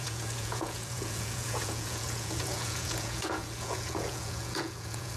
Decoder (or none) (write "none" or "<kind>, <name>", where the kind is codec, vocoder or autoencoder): vocoder, Vocos